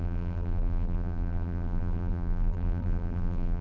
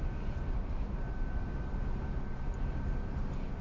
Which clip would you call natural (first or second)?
second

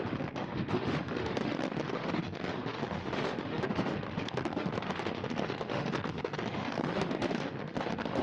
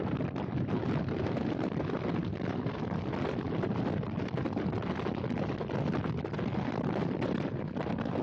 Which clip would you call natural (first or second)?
second